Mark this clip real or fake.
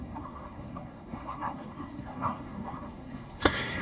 fake